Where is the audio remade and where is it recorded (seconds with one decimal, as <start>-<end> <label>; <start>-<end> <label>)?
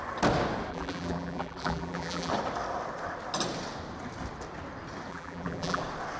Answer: 0.0-0.7 recorded; 0.7-2.3 remade; 2.3-5.1 recorded; 5.1-5.8 remade; 5.8-6.2 recorded